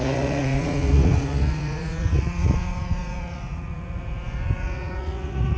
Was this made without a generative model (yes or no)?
no